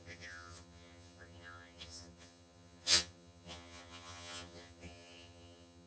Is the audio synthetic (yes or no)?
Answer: yes